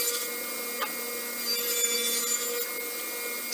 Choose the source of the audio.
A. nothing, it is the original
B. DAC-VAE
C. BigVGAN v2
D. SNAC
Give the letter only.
A